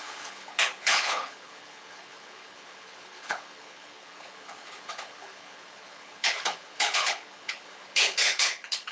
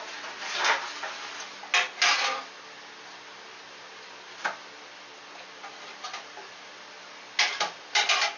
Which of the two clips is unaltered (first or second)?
second